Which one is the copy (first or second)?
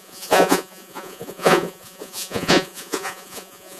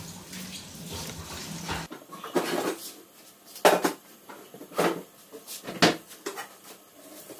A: first